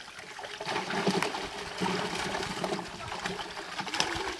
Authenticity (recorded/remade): recorded